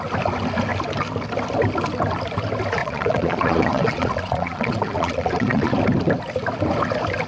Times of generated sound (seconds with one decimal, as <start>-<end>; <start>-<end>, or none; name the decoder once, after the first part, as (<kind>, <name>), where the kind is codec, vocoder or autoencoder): 2.8-5.8 (vocoder, Vocos)